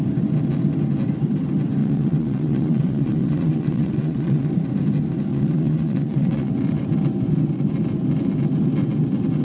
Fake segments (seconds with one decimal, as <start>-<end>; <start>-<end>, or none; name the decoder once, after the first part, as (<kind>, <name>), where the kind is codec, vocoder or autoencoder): 1.8-4.5 (vocoder, WaveNeXt); 5.3-6.5